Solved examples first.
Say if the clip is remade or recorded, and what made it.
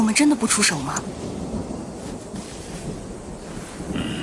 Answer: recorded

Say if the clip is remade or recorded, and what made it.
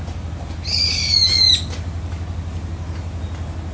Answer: recorded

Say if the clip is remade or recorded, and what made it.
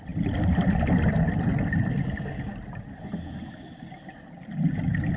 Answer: recorded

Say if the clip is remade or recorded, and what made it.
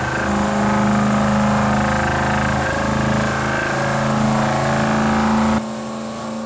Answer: recorded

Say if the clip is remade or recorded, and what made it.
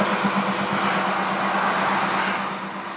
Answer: recorded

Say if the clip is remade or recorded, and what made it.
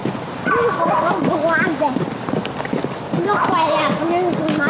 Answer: recorded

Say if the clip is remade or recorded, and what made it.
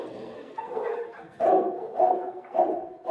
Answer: remade, codec, SNAC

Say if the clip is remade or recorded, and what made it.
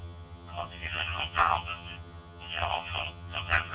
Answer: remade, vocoder, HiFi-GAN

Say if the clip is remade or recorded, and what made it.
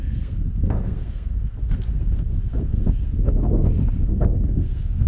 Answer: remade, codec, SNAC